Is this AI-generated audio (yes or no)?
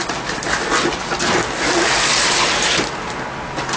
no